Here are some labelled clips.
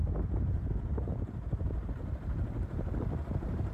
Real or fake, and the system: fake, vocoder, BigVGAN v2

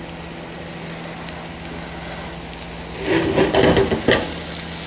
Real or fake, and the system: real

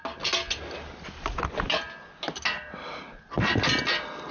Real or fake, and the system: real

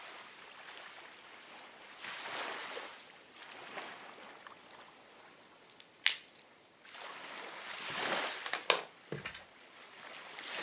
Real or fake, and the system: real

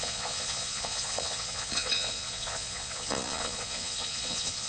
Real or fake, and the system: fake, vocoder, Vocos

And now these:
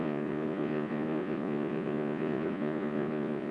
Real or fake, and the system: fake, vocoder, Vocos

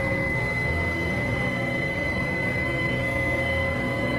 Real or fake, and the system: fake, codec, SNAC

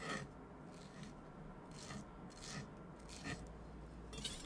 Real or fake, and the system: real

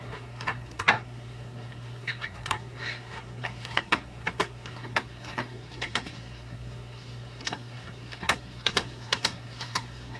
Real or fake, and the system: fake, codec, SNAC